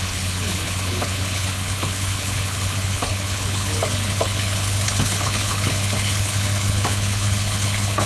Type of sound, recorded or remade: remade